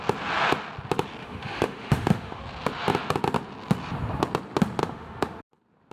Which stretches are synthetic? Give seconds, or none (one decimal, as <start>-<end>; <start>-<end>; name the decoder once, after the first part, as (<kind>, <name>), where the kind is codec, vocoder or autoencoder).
1.2-2.4 (autoencoder, DAC-VAE); 4.8-5.4